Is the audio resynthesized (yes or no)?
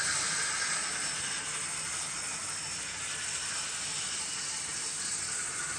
no